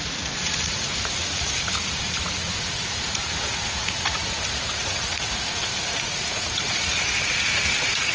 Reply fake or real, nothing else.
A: fake